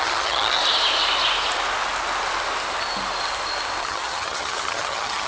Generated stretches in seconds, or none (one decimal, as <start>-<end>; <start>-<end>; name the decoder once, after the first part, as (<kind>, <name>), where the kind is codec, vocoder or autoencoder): 0.0-0.6 (vocoder, HiFi-GAN); 3.8-5.3